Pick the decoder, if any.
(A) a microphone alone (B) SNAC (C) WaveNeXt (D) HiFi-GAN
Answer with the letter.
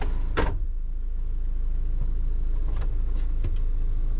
A